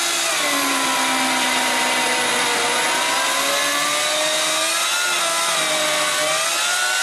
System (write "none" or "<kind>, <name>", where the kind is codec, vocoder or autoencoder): none